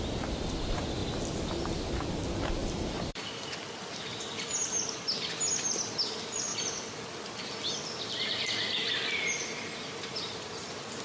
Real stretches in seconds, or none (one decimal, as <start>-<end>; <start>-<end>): 0.0-2.6; 3.5-6.5; 7.4-11.0